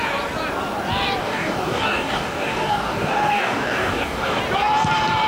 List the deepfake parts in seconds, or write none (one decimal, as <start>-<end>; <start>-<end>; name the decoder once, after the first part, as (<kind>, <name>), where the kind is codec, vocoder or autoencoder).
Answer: 1.2-4.4 (codec, DAC)